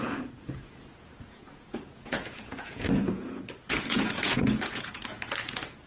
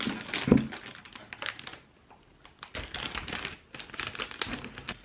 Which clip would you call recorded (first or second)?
second